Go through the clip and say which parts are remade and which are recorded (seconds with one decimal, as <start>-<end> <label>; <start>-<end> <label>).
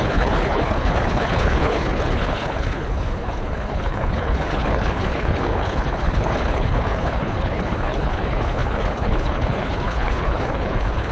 0.0-11.1 remade